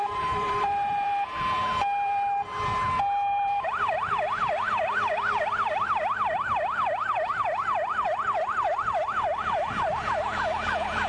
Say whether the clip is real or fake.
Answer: fake